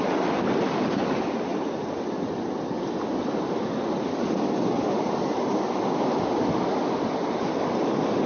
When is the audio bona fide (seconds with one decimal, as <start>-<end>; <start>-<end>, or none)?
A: 0.0-8.3